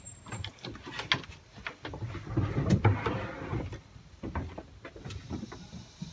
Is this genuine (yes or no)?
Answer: yes